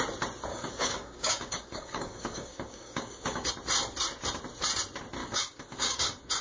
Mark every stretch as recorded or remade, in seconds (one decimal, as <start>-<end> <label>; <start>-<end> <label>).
0.0-0.5 recorded; 0.5-3.5 remade; 3.5-5.2 recorded; 5.2-6.4 remade